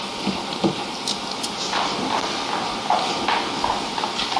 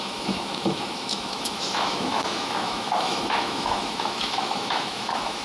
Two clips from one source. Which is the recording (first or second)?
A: first